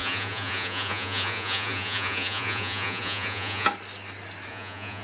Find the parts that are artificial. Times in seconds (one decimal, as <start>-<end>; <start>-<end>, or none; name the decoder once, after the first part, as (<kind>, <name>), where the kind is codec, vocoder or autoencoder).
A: 0.0-3.7 (vocoder, Vocos); 4.5-5.0